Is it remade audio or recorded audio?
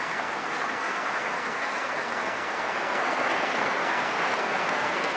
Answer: remade